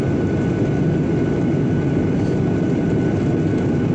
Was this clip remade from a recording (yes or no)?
no